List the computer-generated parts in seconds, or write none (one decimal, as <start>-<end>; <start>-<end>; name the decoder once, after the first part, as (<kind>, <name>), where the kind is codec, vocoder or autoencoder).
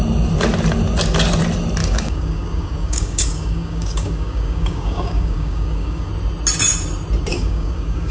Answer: 1.8-6.1 (codec, DAC); 7.3-8.1